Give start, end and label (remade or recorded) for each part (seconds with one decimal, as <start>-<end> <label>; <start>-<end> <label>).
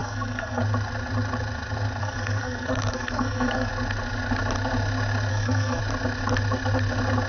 0.0-0.6 remade; 0.6-2.0 recorded; 2.0-3.7 remade; 3.7-5.3 recorded; 5.3-5.8 remade; 5.8-7.3 recorded